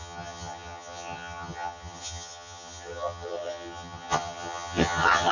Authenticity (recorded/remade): remade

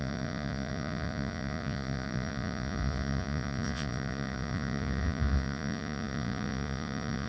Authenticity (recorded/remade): remade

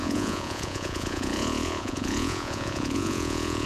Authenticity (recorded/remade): remade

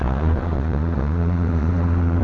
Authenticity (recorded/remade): remade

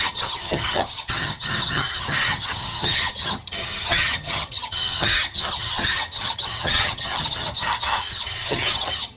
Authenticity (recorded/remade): remade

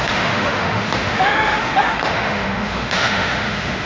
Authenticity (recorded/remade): remade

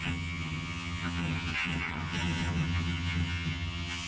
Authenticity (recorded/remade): remade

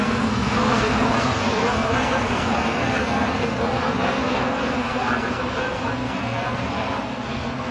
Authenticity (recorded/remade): remade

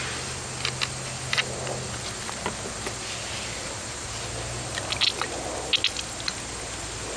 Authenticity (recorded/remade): recorded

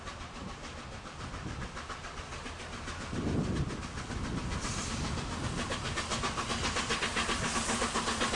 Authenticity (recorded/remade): recorded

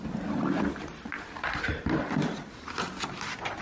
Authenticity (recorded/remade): recorded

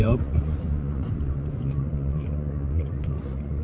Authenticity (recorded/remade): remade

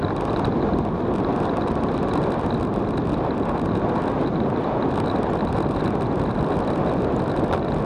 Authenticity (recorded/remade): recorded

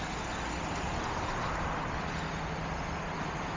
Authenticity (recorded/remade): recorded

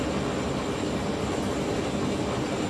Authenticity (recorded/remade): recorded